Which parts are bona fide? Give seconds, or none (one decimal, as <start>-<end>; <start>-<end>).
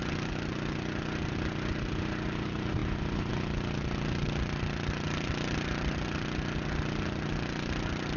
0.0-8.2